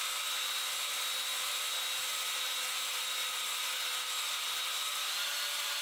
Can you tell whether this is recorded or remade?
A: recorded